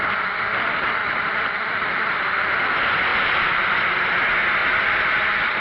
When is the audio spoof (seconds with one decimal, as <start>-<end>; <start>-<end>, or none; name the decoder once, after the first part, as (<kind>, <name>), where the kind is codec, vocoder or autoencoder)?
1.0-2.0 (vocoder, BigVGAN v2); 3.1-3.8; 4.6-5.6